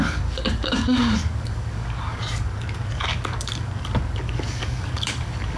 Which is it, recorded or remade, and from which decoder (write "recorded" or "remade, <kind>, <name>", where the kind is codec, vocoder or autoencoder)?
remade, codec, DAC